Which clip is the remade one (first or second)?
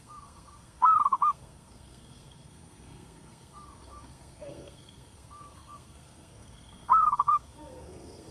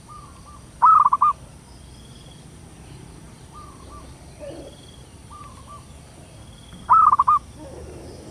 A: first